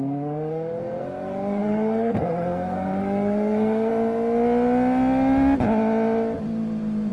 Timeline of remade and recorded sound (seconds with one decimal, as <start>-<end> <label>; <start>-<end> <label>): 0.0-3.9 remade; 3.9-7.1 recorded